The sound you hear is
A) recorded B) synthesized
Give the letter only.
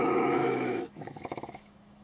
B